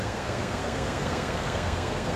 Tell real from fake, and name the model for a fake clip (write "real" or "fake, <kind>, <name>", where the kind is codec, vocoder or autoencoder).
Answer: fake, codec, SNAC